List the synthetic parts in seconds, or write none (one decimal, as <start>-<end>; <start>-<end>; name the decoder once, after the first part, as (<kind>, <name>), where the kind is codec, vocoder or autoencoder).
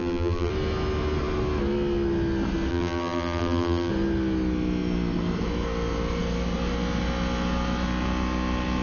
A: 0.0-0.5 (vocoder, BigVGAN v2); 2.7-3.9